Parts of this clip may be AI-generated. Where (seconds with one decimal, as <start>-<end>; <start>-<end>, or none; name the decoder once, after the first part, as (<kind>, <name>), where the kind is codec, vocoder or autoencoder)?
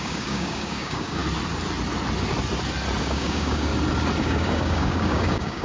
0.0-1.2 (codec, DAC); 3.0-3.7; 4.2-5.6